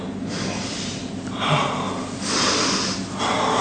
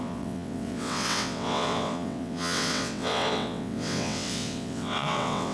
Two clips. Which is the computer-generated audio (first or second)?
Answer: second